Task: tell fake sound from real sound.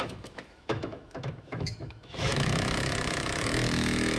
fake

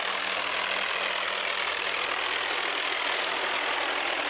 real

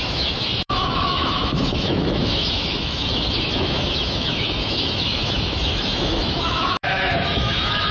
fake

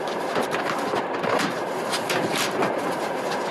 real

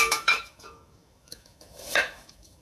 fake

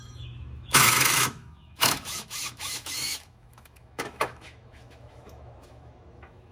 fake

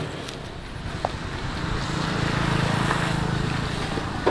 real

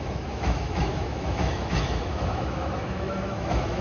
fake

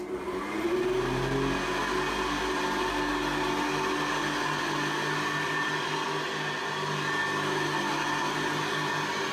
real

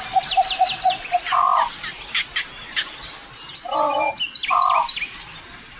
real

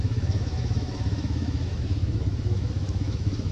fake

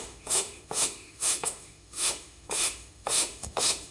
fake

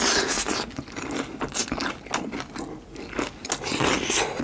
real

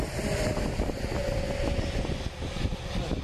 real